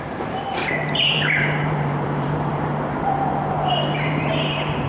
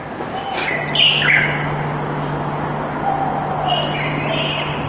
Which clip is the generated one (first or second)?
first